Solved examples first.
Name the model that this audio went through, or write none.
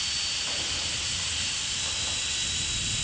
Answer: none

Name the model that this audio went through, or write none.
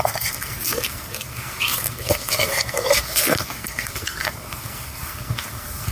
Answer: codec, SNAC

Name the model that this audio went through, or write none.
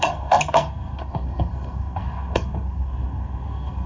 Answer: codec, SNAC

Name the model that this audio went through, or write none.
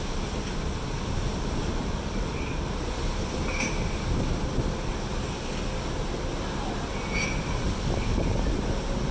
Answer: none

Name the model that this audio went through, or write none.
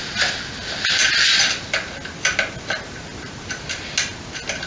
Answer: none